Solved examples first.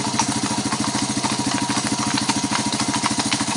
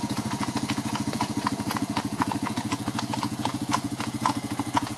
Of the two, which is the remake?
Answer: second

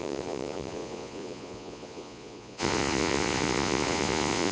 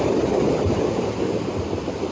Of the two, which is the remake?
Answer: first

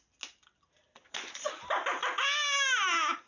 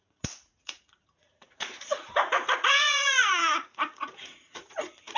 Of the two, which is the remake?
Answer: second